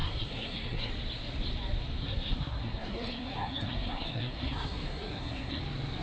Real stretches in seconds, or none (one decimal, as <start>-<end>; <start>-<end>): 0.9-2.0; 5.6-6.0